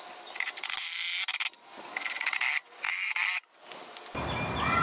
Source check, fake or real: real